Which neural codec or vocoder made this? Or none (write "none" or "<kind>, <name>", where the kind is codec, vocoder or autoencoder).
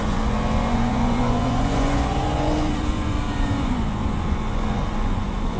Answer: vocoder, Vocos